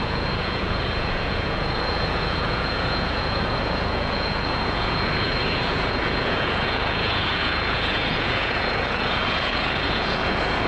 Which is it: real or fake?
fake